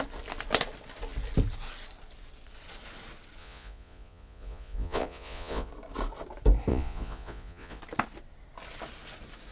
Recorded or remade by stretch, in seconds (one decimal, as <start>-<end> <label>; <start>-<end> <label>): 0.0-3.4 recorded; 3.4-5.7 remade; 5.7-6.7 recorded; 6.7-7.8 remade; 7.8-9.5 recorded